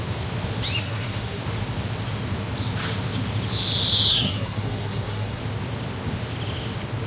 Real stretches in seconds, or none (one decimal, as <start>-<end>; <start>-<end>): 0.0-0.8; 1.4-4.1; 5.4-7.1